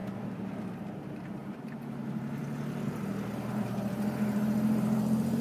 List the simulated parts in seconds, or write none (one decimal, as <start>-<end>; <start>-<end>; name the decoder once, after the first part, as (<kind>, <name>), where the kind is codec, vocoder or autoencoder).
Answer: 0.7-2.4 (vocoder, BigVGAN v2); 3.0-5.4